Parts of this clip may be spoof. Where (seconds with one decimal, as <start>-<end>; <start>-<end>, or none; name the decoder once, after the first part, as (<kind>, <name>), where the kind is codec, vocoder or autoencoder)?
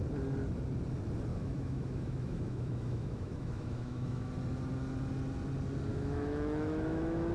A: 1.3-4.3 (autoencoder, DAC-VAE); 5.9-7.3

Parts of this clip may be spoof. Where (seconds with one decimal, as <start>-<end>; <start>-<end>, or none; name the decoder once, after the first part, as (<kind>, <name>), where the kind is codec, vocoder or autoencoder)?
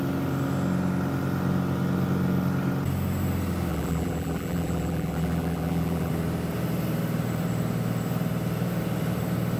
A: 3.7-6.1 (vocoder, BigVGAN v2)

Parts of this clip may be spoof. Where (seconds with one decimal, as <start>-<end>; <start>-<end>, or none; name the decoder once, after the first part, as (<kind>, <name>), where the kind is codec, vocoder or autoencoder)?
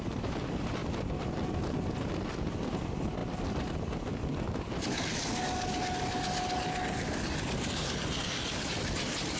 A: none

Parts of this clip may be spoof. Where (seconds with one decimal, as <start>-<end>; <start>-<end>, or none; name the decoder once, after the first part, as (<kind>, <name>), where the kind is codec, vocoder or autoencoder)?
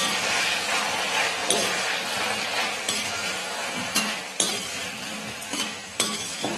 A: 3.4-4.1 (autoencoder, DAC-VAE); 5.5-6.6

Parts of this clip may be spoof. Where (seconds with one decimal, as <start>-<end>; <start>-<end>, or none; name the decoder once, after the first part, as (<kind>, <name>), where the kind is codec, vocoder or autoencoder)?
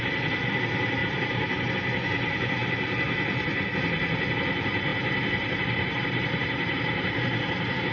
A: 1.0-1.7 (vocoder, BigVGAN v2); 4.9-7.9